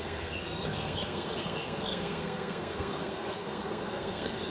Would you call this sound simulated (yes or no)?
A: yes